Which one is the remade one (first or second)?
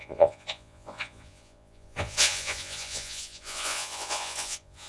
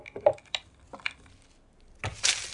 first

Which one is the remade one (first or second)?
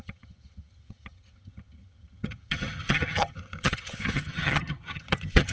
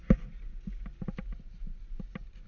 first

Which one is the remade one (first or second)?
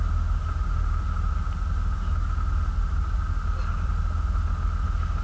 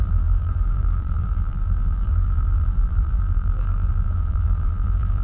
second